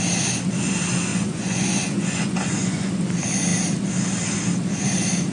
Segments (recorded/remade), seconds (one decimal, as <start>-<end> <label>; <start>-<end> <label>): 0.0-1.1 recorded; 1.1-2.9 remade; 2.9-5.3 recorded

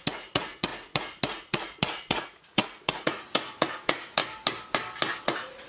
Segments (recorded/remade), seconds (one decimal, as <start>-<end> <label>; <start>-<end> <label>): 0.0-4.2 remade; 4.2-5.2 recorded; 5.2-5.7 remade

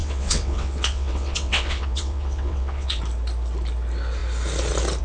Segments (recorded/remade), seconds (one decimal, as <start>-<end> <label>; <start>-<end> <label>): 0.0-3.0 remade; 3.0-5.0 recorded

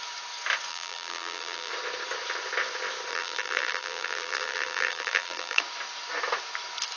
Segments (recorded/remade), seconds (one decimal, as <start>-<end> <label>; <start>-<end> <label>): 0.0-0.7 recorded; 0.7-1.7 remade; 1.7-3.1 recorded; 3.1-5.6 remade; 5.6-7.0 recorded

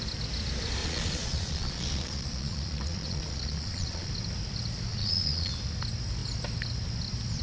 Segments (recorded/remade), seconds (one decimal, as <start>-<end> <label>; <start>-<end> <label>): 0.0-0.8 recorded; 0.8-4.1 remade; 4.1-4.9 recorded; 4.9-5.5 remade; 5.5-7.4 recorded